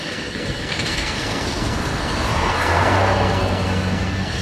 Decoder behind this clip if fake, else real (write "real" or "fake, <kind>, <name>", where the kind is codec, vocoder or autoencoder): fake, codec, SNAC